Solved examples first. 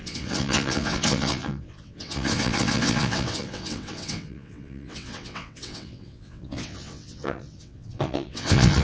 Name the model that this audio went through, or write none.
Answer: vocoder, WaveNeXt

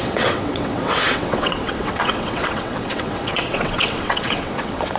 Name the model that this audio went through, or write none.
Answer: vocoder, WaveNeXt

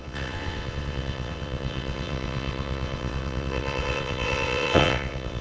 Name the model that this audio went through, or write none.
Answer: vocoder, WaveNeXt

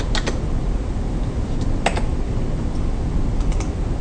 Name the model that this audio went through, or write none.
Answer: none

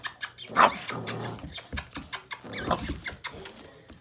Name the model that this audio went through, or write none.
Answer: none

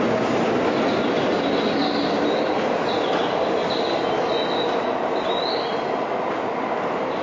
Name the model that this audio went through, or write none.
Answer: none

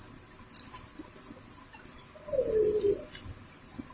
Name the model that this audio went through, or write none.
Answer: none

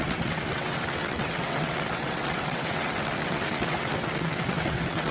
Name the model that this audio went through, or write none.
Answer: vocoder, WaveNeXt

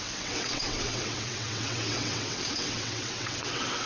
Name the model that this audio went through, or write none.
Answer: vocoder, WaveNeXt